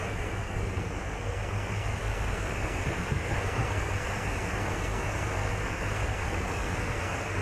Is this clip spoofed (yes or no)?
yes